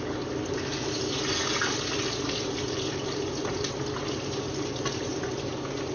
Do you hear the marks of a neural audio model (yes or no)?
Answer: no